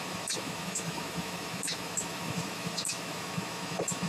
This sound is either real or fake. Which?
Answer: fake